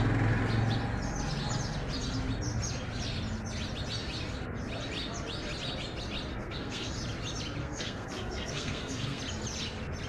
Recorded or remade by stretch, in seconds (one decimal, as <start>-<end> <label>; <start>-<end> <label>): 0.0-6.3 recorded; 6.3-6.9 remade; 6.9-7.6 recorded; 7.6-9.2 remade; 9.2-10.1 recorded